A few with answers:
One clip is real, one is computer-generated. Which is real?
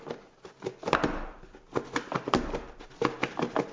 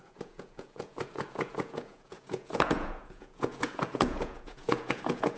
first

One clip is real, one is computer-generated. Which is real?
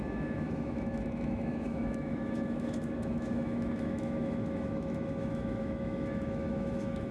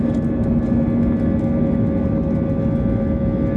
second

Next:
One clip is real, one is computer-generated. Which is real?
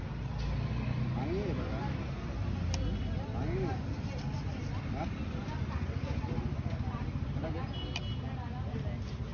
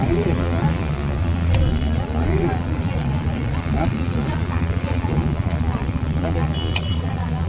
first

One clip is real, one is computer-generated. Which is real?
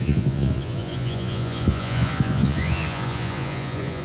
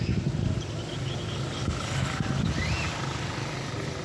second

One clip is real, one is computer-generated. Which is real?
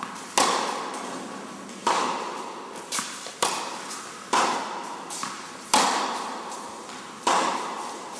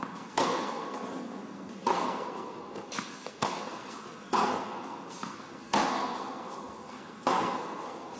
first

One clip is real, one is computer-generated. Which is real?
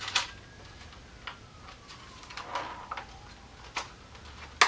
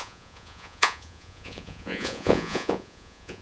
first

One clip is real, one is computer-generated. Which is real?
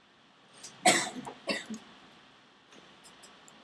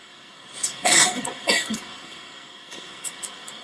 first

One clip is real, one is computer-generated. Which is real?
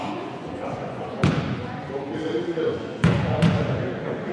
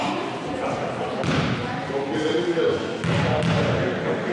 second